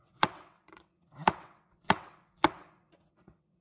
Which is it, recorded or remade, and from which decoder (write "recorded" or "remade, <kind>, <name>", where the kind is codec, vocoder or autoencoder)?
remade, vocoder, WaveNeXt